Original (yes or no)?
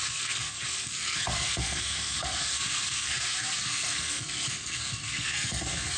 no